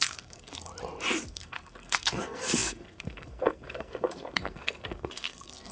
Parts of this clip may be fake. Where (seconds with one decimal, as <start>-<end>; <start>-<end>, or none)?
0.0-0.7; 1.3-5.7

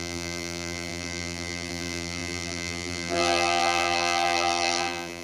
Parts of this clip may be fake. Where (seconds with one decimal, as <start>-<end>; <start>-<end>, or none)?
0.0-5.2

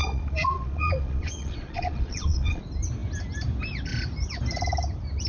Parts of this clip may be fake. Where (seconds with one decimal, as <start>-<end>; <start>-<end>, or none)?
0.0-2.6

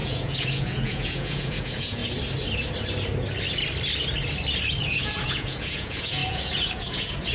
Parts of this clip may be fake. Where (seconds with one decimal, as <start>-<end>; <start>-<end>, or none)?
0.0-2.0; 4.8-7.3

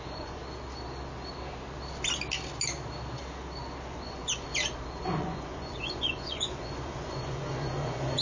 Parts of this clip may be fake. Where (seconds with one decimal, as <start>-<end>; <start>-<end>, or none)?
0.0-0.4; 3.9-4.5; 5.2-8.2

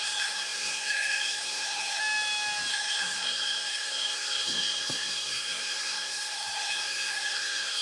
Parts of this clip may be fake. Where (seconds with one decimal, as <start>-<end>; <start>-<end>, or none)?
0.0-2.0; 2.7-7.8